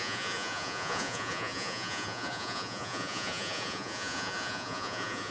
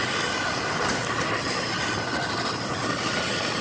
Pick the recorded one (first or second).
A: second